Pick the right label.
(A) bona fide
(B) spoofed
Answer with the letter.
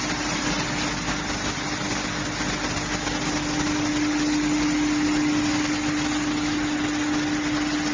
A